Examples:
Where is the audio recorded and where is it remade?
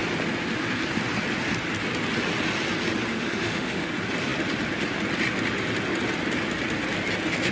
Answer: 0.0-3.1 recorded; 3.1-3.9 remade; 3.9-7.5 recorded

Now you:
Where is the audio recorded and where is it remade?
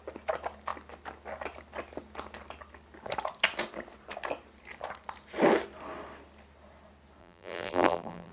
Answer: 0.0-7.2 recorded; 7.2-8.3 remade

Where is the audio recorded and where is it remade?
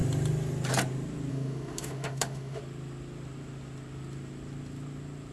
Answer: 0.0-1.3 recorded; 1.3-2.6 remade; 2.6-5.3 recorded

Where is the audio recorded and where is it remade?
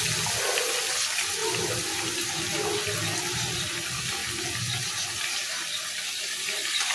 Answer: 0.0-6.9 recorded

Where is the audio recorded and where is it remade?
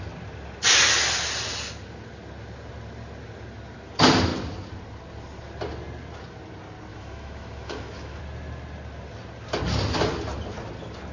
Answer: 0.0-6.9 recorded; 6.9-8.2 remade; 8.2-11.1 recorded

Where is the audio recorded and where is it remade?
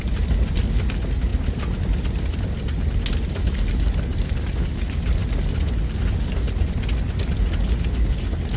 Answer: 0.0-8.6 recorded